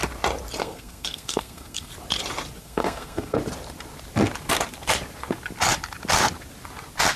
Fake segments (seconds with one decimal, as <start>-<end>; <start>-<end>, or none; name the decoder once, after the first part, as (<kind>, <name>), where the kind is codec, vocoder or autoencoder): 0.6-1.9 (codec, SNAC); 2.6-3.4